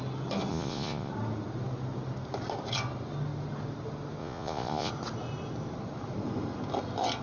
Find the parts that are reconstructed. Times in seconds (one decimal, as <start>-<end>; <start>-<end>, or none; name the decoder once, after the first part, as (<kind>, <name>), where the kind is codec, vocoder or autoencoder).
0.5-1.1 (vocoder, Vocos); 4.2-4.9